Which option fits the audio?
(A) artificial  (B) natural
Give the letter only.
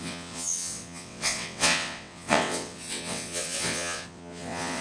A